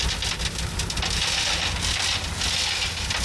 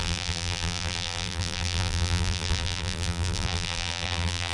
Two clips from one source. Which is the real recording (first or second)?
first